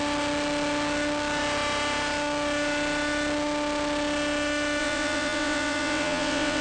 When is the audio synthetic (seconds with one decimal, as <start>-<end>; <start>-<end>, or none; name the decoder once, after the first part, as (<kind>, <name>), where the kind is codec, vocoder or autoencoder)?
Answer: 4.8-6.6 (vocoder, WaveNeXt)